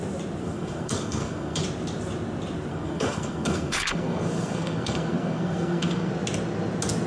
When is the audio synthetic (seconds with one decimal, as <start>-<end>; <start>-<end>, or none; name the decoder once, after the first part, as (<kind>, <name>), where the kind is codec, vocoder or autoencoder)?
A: 0.4-1.6 (codec, SNAC); 2.7-6.1